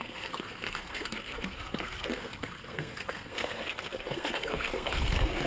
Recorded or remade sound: remade